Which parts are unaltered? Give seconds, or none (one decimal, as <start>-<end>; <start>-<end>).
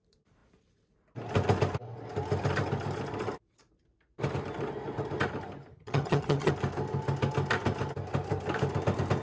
0.0-5.7; 6.5-9.2